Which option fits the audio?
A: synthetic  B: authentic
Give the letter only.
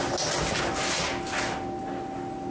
B